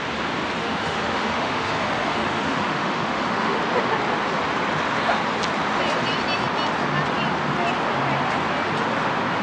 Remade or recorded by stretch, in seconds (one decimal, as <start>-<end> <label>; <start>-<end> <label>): 0.0-0.6 recorded; 0.6-1.7 remade; 1.7-2.1 recorded; 2.1-3.6 remade; 3.6-9.4 recorded